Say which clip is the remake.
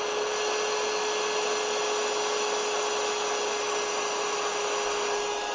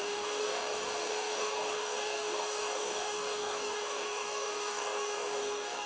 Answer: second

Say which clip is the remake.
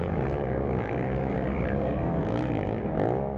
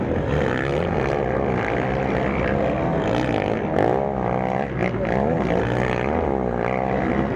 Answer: first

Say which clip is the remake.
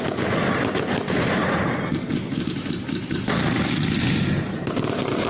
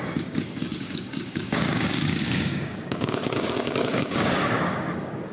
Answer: second